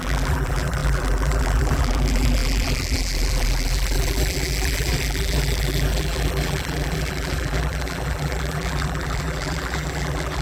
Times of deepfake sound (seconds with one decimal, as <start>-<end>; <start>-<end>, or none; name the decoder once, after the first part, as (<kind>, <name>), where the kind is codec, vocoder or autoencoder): 0.0-10.4 (vocoder, BigVGAN v2)